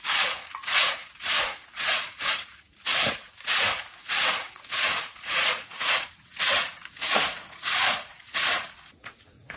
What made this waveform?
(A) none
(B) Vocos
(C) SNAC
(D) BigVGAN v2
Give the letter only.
B